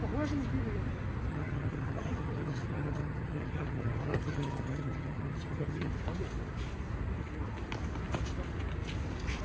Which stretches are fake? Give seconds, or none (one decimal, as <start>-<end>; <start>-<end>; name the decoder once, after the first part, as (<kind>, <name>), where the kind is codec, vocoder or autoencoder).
1.3-5.9 (vocoder, HiFi-GAN)